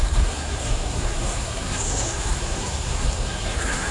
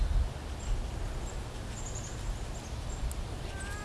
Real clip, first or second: second